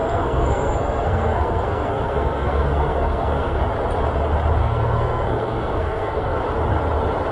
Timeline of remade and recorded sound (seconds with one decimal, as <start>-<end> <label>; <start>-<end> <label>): 0.0-3.6 remade; 3.6-4.6 recorded; 4.6-6.4 remade; 6.4-7.3 recorded